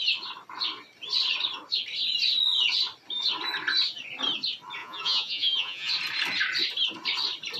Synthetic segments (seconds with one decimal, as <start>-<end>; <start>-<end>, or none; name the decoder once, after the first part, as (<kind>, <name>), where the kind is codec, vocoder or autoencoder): 4.8-5.9 (vocoder, Vocos)